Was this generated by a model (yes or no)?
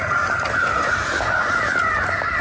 no